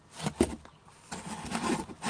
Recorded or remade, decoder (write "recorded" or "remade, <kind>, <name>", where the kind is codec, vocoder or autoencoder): recorded